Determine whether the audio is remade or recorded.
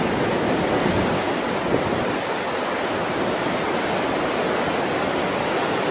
recorded